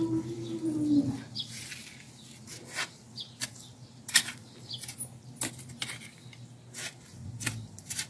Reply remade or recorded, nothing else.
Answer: recorded